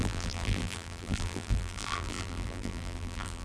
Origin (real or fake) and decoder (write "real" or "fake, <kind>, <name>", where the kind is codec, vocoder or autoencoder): fake, vocoder, BigVGAN v2